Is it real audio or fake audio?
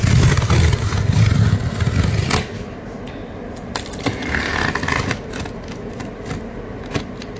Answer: real